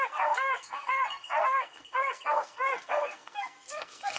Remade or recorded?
remade